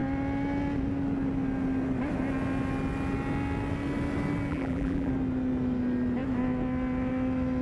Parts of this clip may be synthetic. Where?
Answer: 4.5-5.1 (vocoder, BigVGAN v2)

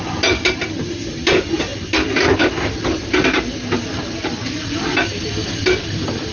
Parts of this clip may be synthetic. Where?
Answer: none

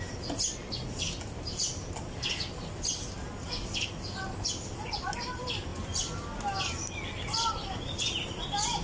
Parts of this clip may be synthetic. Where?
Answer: none

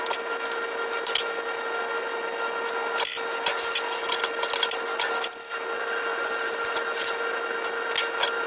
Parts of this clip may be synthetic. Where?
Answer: 6.1-6.7 (vocoder, BigVGAN v2)

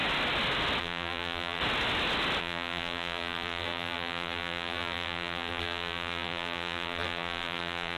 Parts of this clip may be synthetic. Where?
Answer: 0.8-1.6 (vocoder, BigVGAN v2); 2.4-8.0